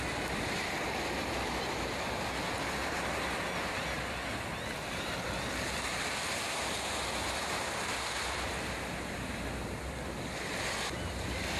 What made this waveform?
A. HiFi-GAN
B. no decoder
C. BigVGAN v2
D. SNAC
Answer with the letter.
B